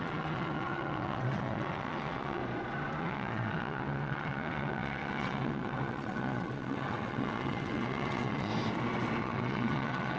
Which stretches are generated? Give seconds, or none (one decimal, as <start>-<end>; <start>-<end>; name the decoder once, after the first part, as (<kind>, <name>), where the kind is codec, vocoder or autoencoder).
0.0-2.4 (vocoder, WaveNeXt); 3.0-8.5; 9.2-10.2